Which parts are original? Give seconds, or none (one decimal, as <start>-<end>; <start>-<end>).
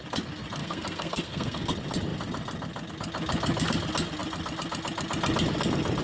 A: 0.0-0.6; 1.7-6.0